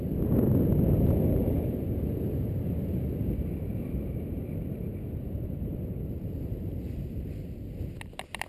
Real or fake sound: real